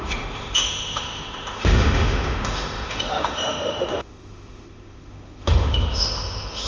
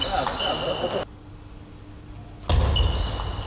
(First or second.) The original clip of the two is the second